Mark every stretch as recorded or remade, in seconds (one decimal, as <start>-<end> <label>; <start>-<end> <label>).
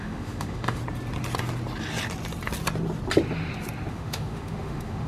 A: 0.0-0.8 remade; 0.8-3.9 recorded; 3.9-5.1 remade